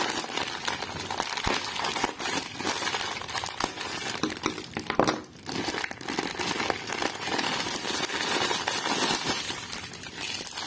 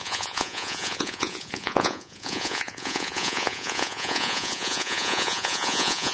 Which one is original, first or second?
first